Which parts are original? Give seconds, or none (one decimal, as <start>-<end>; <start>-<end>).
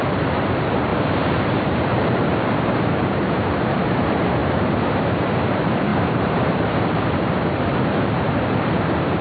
0.9-1.4; 4.4-5.4